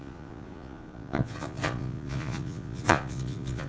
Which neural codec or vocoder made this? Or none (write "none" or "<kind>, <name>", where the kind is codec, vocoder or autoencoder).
vocoder, Vocos